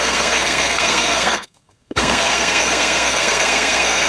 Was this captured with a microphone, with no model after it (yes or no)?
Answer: no